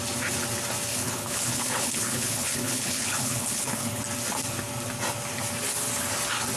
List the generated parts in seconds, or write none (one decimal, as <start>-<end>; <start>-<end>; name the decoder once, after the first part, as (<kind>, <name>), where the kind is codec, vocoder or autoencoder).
0.9-4.0 (codec, HILCodec)

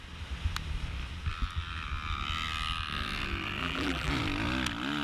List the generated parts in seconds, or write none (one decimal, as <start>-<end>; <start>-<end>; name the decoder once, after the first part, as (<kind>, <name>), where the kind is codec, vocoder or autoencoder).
3.6-4.1 (vocoder, BigVGAN v2)